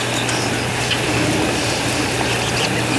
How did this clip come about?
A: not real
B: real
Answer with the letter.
B